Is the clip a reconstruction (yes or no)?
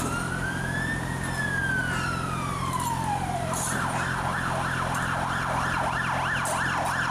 no